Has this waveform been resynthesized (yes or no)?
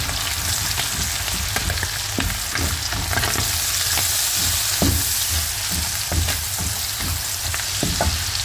no